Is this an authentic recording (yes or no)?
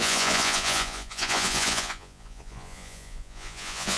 no